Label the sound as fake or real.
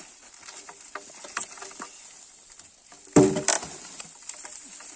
real